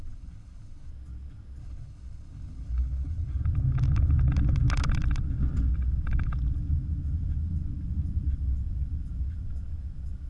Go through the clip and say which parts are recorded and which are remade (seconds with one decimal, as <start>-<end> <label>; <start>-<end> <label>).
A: 0.0-0.9 remade; 0.9-1.6 recorded; 1.6-3.4 remade; 3.4-10.3 recorded